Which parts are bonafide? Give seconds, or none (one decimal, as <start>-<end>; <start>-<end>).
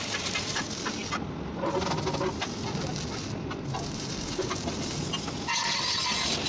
0.0-6.5